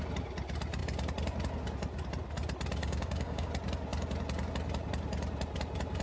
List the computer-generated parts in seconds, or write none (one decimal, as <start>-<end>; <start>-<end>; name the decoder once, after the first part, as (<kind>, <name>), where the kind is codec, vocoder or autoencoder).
2.8-3.5 (codec, DAC)